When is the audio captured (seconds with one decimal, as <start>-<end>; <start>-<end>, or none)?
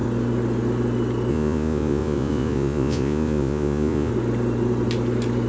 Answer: 0.0-1.3; 4.1-5.5